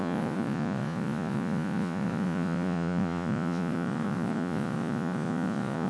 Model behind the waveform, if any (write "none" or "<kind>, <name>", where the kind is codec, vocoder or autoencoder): vocoder, Vocos